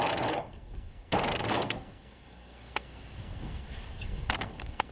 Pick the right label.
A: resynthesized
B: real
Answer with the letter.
A